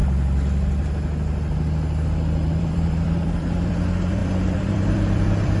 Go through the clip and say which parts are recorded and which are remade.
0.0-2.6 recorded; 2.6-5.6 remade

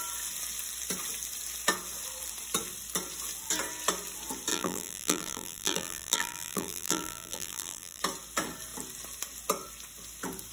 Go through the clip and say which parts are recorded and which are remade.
0.0-4.5 recorded; 4.5-8.0 remade; 8.0-10.5 recorded

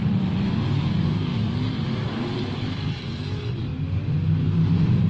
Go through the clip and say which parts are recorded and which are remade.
0.0-3.1 remade; 3.1-5.1 recorded

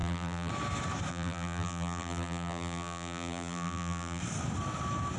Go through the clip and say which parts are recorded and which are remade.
0.0-0.5 remade; 0.5-1.1 recorded; 1.1-4.2 remade; 4.2-5.2 recorded

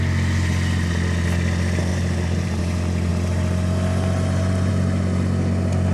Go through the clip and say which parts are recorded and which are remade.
0.0-1.9 recorded; 1.9-2.6 remade; 2.6-5.9 recorded

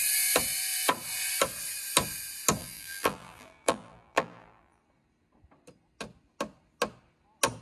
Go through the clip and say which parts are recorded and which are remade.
0.0-2.6 recorded; 2.6-4.8 remade; 4.8-7.6 recorded

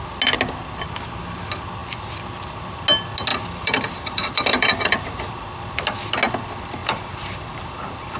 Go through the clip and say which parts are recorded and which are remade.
0.0-3.3 recorded; 3.3-5.3 remade; 5.3-6.8 recorded; 6.8-8.2 remade

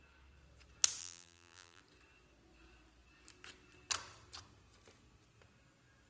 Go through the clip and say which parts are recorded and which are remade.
0.0-1.0 recorded; 1.0-1.8 remade; 1.8-6.1 recorded